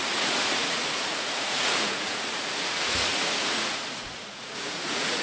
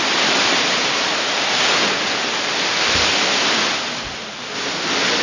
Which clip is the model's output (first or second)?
first